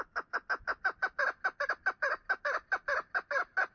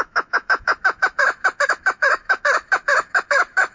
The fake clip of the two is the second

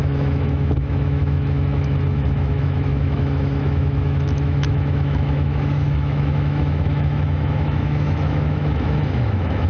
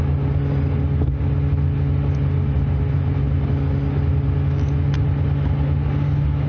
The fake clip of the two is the first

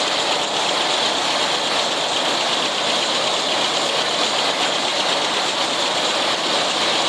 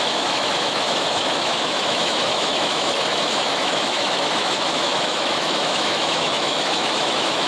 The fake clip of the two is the second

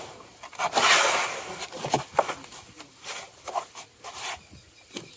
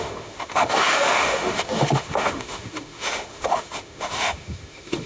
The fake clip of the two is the second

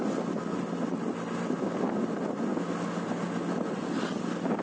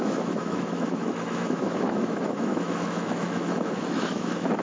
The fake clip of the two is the second